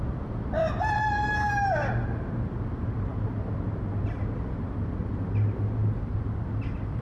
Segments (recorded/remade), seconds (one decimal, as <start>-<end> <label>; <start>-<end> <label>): 0.0-7.0 recorded